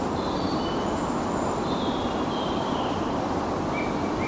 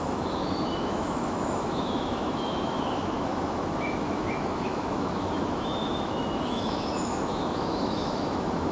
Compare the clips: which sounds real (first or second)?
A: first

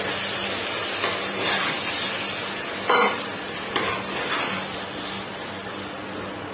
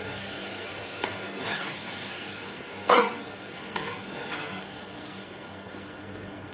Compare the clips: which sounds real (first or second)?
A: first